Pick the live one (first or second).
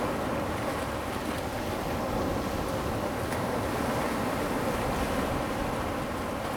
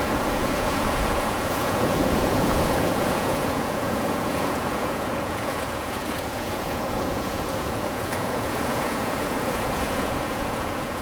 first